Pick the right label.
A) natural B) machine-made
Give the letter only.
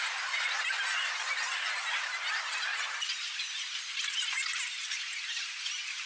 A